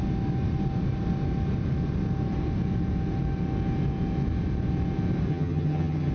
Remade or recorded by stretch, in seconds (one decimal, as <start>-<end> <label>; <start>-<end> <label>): 0.0-5.3 recorded; 5.3-6.1 remade